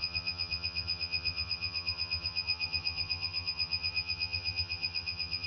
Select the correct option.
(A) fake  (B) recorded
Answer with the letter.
A